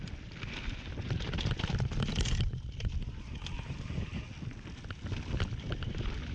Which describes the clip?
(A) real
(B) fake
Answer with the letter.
A